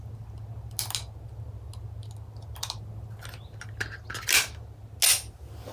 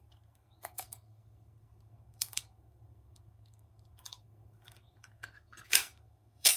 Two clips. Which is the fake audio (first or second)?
second